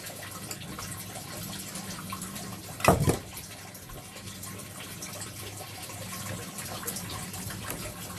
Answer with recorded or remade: remade